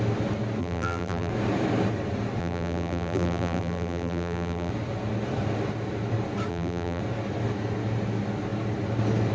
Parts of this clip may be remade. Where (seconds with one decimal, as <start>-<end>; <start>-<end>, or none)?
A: 0.6-1.3; 2.4-4.7; 6.5-7.0